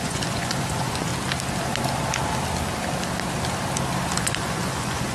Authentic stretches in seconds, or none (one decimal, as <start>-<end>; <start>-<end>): 1.1-4.2